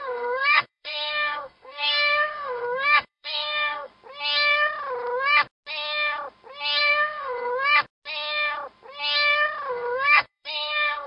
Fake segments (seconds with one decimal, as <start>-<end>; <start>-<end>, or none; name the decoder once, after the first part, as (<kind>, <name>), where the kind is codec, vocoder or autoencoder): 0.0-3.9 (codec, SNAC); 6.8-7.5; 9.7-11.1